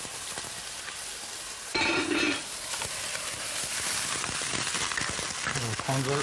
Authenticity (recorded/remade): recorded